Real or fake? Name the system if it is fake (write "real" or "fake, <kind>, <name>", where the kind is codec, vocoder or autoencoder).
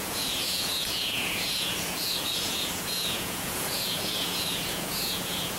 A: fake, vocoder, Vocos